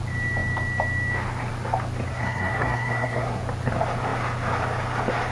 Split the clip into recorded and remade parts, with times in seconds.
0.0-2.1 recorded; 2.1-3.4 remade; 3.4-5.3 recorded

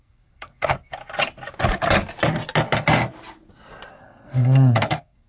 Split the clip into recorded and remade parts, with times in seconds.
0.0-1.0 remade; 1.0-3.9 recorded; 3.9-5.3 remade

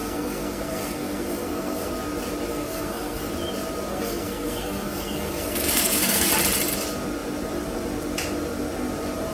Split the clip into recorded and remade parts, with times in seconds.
0.0-1.9 remade; 1.9-2.5 recorded; 2.5-3.3 remade; 3.3-3.9 recorded; 3.9-6.3 remade; 6.3-9.3 recorded

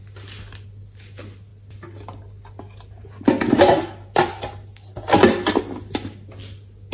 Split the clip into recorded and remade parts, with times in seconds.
0.0-6.9 recorded